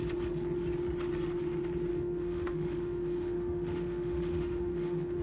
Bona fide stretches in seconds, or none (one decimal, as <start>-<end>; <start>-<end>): 0.0-1.9